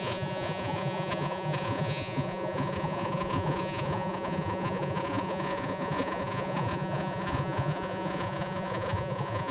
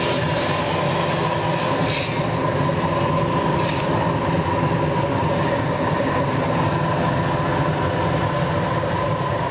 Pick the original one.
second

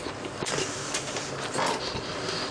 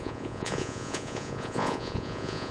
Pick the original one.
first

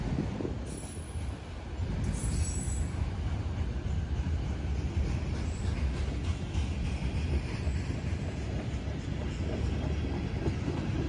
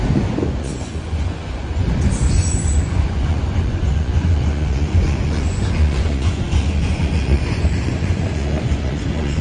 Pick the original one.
first